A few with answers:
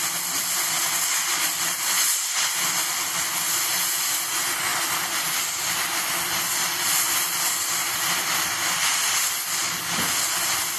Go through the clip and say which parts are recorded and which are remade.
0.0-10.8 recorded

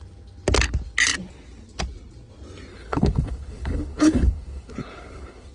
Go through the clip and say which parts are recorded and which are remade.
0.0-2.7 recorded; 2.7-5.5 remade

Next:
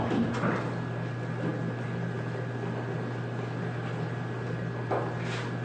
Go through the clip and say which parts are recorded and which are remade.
0.0-5.6 recorded